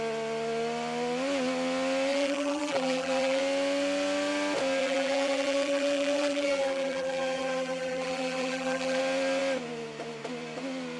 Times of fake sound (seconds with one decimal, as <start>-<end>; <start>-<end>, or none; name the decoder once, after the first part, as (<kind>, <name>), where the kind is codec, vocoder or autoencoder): 2.1-3.4 (vocoder, BigVGAN v2); 4.8-9.0